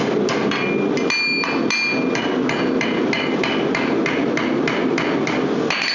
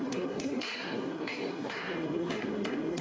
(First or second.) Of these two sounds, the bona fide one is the first